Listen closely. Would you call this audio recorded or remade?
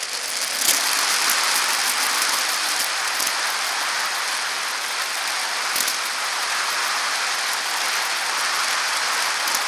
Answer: recorded